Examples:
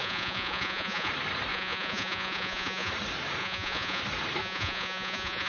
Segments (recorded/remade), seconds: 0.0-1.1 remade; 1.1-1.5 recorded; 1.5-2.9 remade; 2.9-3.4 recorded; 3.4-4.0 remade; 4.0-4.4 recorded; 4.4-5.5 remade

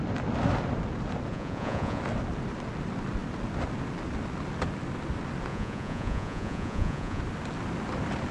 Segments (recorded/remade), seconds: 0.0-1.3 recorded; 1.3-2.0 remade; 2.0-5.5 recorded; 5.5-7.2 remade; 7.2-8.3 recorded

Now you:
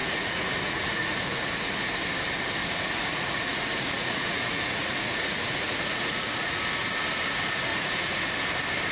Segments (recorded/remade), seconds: 0.0-1.8 remade; 1.8-2.6 recorded; 2.6-6.6 remade; 6.6-7.7 recorded; 7.7-8.2 remade; 8.2-8.9 recorded